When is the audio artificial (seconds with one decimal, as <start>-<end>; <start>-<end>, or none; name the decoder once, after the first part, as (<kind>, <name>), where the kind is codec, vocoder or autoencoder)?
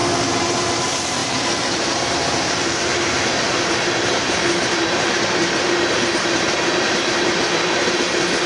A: 0.7-8.5 (vocoder, BigVGAN v2)